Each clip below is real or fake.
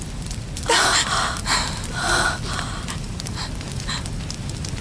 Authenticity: real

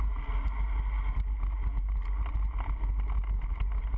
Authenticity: real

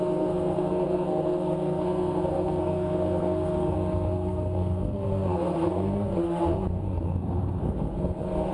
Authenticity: fake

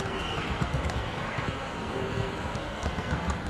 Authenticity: fake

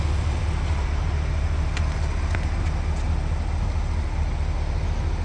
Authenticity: real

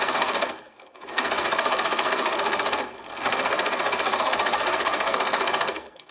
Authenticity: fake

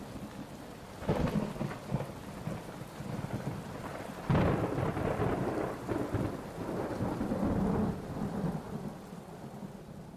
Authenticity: real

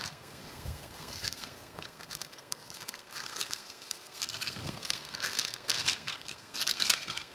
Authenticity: fake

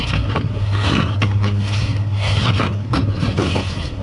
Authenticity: fake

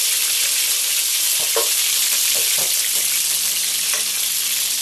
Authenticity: real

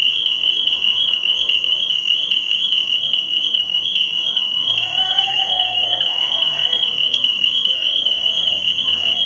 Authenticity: fake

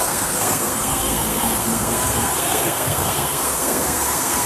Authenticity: fake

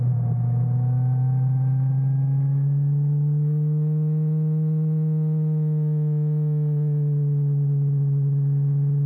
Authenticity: real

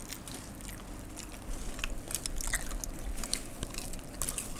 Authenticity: real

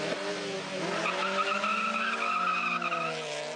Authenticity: real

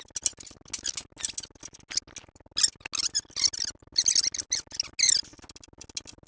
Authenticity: real